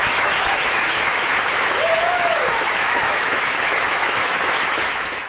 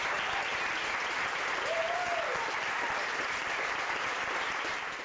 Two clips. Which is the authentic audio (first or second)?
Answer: second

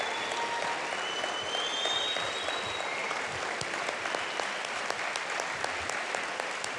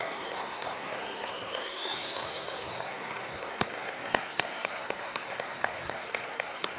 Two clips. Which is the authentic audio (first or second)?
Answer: first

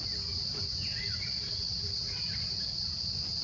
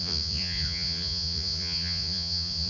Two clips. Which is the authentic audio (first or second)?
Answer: first